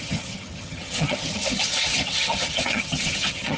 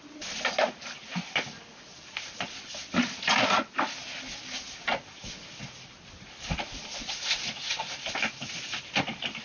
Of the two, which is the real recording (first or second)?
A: second